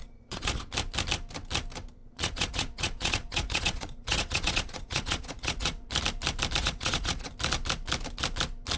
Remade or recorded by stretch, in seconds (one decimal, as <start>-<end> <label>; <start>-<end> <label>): 0.0-0.7 remade; 0.7-2.0 recorded; 2.0-5.9 remade; 5.9-6.6 recorded; 6.6-7.3 remade; 7.3-8.8 recorded